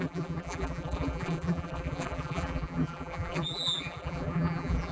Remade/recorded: remade